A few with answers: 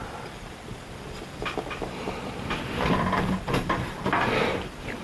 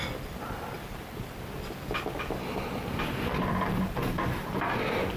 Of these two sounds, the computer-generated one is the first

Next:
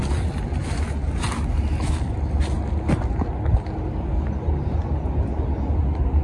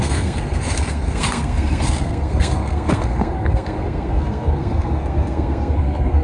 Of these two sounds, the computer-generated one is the second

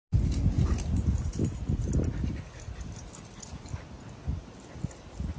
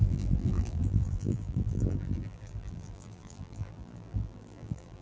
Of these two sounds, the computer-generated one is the second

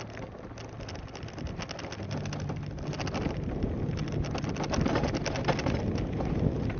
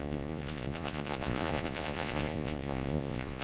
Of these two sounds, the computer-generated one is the second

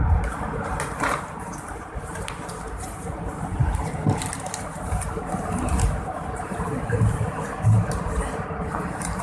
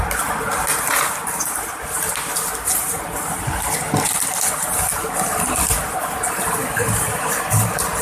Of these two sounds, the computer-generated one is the first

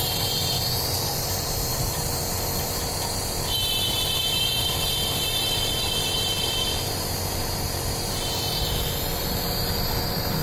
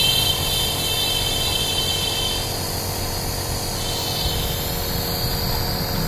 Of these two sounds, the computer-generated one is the first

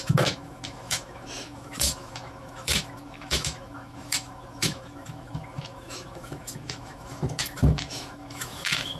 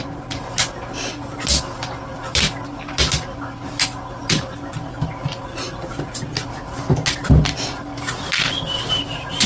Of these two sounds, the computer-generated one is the first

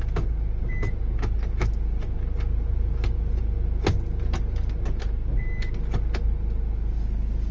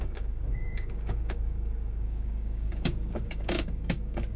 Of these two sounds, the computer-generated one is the second